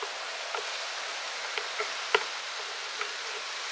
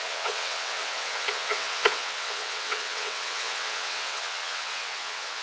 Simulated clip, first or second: second